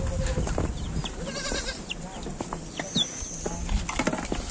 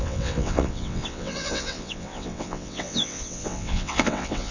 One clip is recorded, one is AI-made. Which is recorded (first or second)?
first